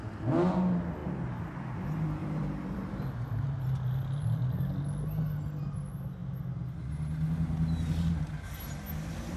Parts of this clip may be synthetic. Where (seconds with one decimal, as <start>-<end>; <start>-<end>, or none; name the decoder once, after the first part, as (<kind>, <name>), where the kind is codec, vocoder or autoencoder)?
2.2-3.1 (vocoder, BigVGAN v2)